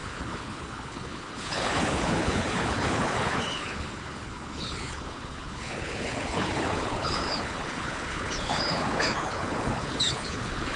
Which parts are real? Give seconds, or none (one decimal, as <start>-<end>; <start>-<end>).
none